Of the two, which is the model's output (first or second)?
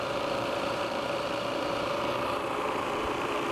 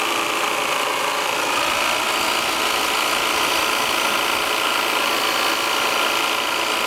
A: first